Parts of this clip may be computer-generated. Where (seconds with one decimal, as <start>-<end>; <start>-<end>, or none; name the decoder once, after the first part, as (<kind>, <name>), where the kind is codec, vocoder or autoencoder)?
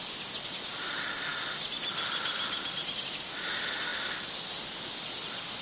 3.9-5.6 (vocoder, BigVGAN v2)